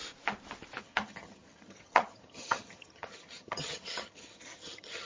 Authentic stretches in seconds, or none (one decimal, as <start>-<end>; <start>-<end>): 0.0-0.8